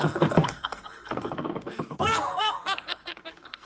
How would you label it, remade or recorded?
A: remade